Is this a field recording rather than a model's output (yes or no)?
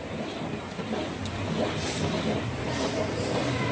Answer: yes